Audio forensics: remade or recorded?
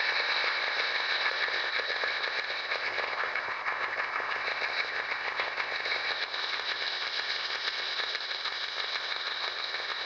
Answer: remade